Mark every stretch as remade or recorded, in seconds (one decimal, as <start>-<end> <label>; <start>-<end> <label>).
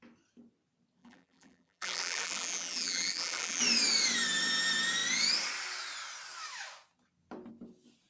0.0-1.0 recorded; 1.0-3.6 remade; 3.6-8.1 recorded